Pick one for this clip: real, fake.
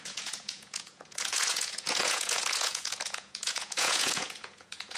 fake